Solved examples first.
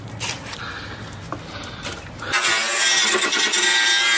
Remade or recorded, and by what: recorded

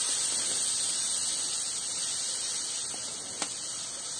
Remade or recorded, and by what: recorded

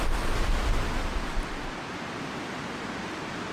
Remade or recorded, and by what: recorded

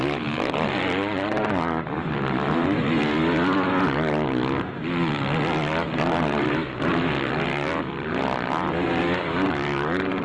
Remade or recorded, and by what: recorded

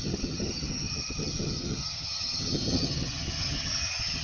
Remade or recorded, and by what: remade, vocoder, HiFi-GAN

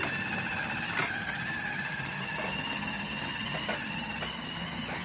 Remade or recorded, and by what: recorded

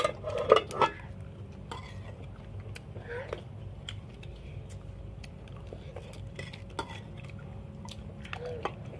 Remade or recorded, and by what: recorded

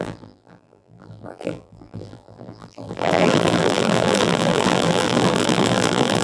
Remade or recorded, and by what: remade, vocoder, BigVGAN v2